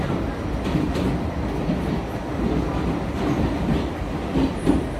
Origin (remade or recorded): recorded